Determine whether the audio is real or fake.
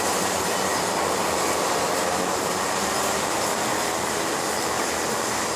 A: fake